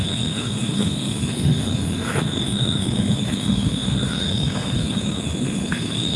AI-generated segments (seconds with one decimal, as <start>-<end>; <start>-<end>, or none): 0.0-6.2